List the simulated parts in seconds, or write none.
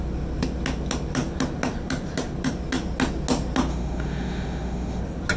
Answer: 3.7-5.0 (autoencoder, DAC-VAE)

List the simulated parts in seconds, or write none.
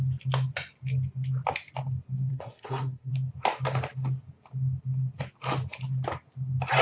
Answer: 2.3-3.1 (codec, SNAC)